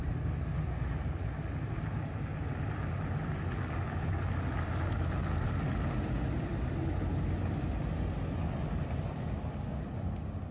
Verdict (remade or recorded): recorded